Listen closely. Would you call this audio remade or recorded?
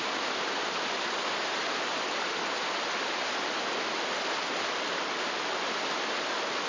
recorded